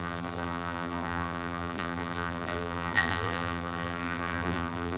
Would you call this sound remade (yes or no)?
yes